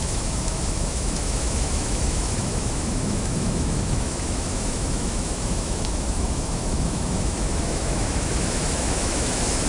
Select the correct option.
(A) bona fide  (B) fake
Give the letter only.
B